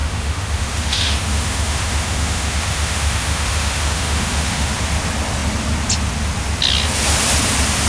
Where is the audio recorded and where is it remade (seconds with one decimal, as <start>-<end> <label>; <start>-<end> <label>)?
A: 0.0-4.7 remade; 4.7-7.9 recorded